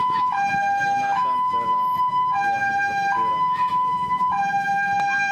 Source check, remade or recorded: remade